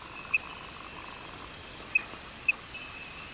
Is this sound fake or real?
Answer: fake